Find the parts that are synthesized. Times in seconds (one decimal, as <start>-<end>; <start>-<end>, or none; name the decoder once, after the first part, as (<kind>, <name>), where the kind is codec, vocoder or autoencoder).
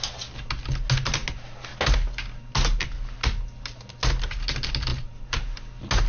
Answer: 4.9-5.6 (vocoder, BigVGAN v2)